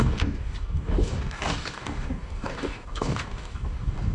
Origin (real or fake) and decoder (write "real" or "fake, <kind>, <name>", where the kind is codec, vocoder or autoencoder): fake, codec, DAC